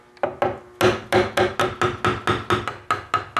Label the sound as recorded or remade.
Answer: recorded